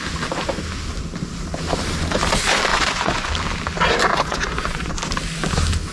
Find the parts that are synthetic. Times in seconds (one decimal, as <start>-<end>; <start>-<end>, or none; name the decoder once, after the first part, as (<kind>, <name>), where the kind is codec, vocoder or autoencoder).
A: 2.7-3.3 (vocoder, Vocos); 4.1-4.9